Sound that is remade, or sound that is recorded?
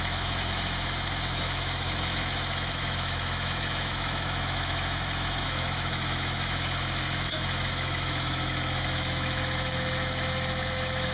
remade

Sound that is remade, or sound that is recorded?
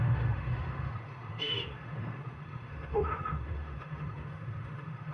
remade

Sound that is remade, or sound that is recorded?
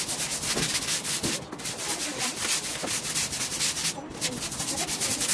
recorded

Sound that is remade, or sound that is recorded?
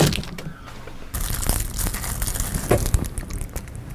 recorded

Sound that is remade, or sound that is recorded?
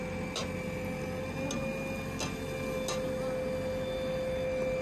recorded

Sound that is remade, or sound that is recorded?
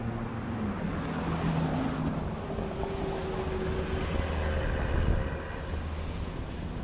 recorded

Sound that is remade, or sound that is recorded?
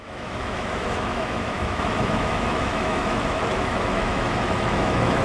remade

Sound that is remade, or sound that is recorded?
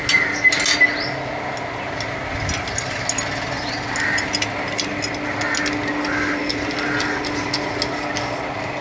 recorded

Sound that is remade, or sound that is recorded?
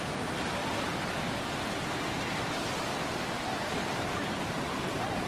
recorded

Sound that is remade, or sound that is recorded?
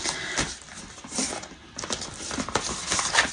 recorded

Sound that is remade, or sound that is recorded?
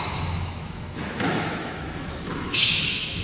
remade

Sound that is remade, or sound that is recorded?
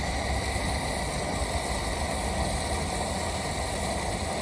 recorded